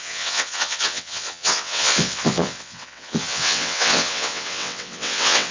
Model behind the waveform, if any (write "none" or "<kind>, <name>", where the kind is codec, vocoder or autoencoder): vocoder, WaveNeXt